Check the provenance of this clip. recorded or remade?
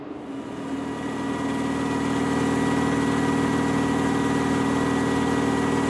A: recorded